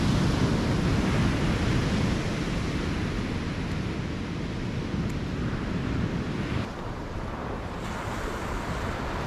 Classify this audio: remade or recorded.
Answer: recorded